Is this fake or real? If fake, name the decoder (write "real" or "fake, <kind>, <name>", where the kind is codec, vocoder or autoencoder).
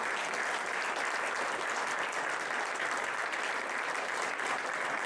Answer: real